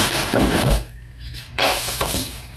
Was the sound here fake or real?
fake